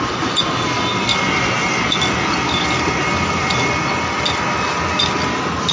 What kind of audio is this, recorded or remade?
recorded